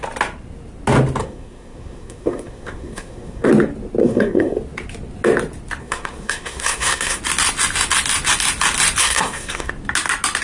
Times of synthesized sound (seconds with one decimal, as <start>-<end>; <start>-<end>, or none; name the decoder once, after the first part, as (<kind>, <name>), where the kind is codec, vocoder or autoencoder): 1.2-3.5 (codec, SNAC); 4.0-4.6; 5.8-7.2; 9.0-9.7

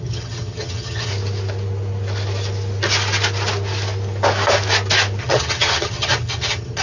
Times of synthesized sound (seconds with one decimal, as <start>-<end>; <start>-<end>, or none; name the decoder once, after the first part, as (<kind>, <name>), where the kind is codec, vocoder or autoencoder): 0.0-1.1 (vocoder, HiFi-GAN); 5.2-6.8

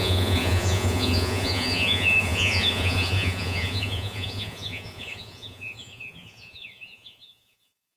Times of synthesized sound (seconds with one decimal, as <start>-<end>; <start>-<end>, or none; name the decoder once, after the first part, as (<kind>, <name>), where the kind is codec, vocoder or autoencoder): 0.0-8.0 (vocoder, Vocos)

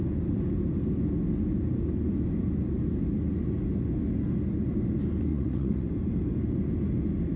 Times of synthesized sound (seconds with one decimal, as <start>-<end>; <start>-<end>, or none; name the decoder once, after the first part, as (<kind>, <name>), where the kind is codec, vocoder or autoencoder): 5.3-5.9 (vocoder, Vocos)

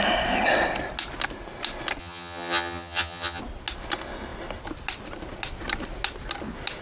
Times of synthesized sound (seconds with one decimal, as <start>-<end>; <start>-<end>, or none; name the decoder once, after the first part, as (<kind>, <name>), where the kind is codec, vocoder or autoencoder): 2.0-3.4 (vocoder, HiFi-GAN)

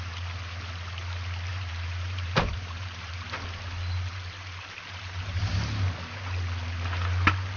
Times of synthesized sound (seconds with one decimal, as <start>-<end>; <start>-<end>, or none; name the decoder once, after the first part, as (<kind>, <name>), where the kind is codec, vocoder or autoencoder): 1.5-3.1 (vocoder, BigVGAN v2)

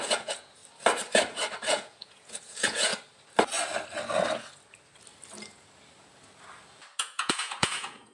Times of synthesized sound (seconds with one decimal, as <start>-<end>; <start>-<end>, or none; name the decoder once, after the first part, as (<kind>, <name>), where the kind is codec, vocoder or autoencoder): 0.0-0.6 (vocoder, Vocos); 1.7-2.9; 7.0-8.1

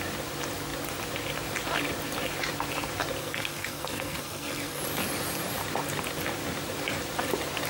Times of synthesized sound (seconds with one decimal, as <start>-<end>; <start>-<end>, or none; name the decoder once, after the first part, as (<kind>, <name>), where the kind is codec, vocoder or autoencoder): 3.2-4.8 (codec, SNAC)